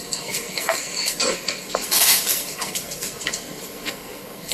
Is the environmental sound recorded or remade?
remade